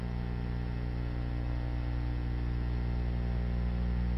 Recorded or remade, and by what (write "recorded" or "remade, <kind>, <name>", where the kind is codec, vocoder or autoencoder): recorded